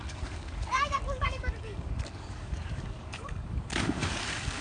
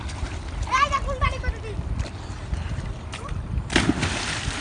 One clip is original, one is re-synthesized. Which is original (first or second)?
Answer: second